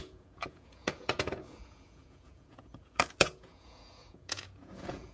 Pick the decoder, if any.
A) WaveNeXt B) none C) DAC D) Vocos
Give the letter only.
D